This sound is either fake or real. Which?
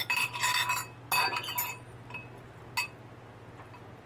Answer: real